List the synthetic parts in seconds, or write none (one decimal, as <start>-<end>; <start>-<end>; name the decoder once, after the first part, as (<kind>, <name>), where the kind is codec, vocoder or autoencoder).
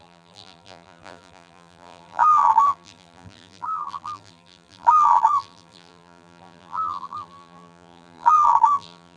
0.0-9.2 (vocoder, BigVGAN v2)